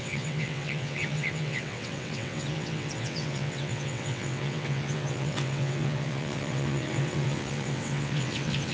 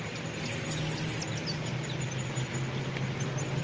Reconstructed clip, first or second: first